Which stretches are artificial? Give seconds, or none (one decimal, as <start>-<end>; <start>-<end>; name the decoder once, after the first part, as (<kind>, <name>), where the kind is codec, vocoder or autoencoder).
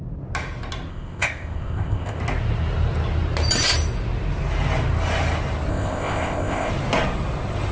0.9-2.2 (codec, ZipCodec); 5.7-6.7